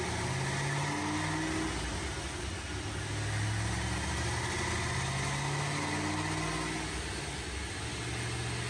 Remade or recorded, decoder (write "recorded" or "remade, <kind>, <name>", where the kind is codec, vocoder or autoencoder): recorded